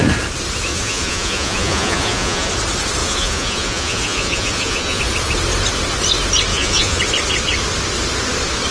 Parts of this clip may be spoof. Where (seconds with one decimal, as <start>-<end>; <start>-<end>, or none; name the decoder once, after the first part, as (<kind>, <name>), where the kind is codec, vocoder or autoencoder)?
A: 0.7-2.5 (vocoder, Vocos); 3.0-5.0; 6.5-7.0